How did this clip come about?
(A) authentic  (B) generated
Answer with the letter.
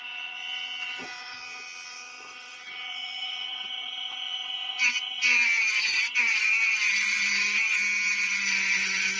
B